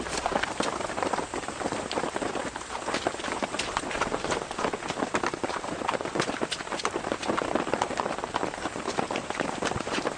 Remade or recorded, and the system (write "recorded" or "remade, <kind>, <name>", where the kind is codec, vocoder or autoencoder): recorded